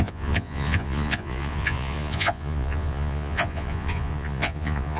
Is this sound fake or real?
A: fake